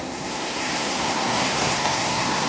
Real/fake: fake